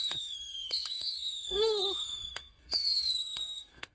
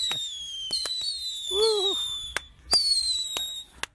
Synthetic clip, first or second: first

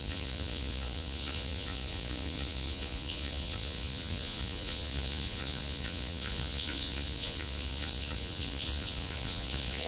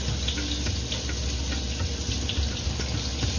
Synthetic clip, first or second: first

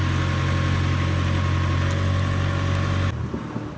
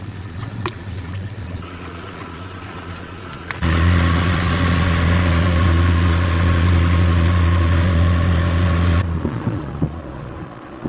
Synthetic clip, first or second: second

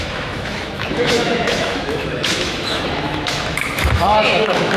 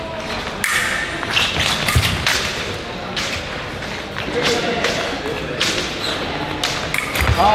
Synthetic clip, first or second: first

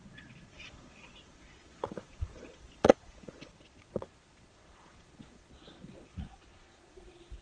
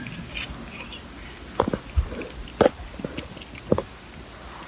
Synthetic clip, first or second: first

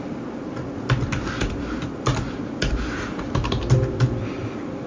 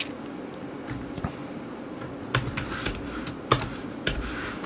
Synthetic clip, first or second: second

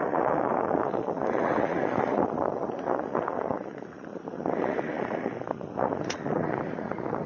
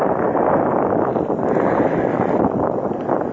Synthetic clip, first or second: first